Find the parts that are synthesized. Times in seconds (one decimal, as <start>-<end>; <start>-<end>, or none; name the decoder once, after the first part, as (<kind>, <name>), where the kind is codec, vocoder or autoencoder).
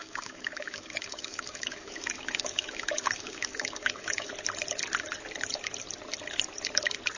0.0-4.3 (autoencoder, DAC-VAE)